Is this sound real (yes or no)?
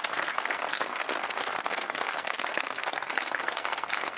no